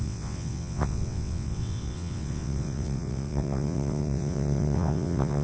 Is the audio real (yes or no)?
no